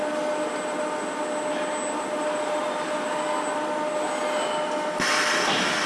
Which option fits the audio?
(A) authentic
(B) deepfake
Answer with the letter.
A